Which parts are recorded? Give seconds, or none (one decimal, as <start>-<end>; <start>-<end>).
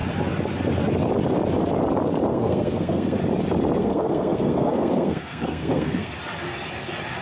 0.0-2.3; 3.2-3.8; 6.1-7.2